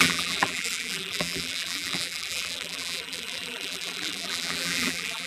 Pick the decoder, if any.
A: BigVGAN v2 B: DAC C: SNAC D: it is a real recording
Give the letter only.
A